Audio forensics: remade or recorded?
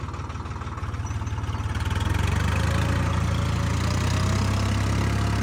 recorded